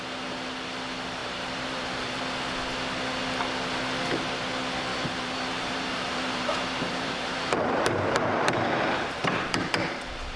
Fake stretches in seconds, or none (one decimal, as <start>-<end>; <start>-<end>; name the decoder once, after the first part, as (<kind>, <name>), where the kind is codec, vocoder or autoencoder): 1.2-2.2 (vocoder, BigVGAN v2); 4.9-9.7